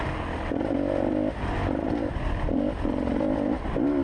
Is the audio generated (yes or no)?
no